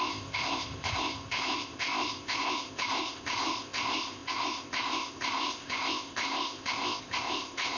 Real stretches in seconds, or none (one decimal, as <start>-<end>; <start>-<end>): none